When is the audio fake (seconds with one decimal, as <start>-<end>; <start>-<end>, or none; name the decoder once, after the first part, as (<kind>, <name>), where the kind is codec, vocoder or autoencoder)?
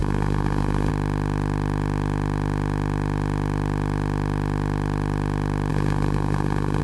0.0-0.9 (codec, SNAC); 5.7-6.8